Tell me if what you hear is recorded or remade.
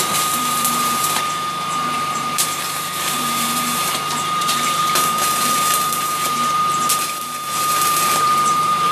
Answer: remade